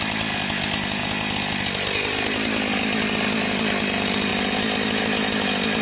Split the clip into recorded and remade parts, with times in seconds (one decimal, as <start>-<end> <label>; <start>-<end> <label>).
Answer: 0.0-5.8 recorded